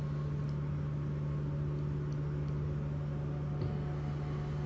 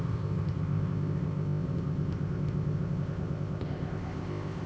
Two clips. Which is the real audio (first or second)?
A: first